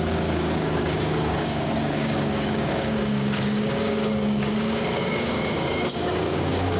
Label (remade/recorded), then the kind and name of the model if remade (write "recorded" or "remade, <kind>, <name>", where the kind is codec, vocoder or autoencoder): remade, codec, DAC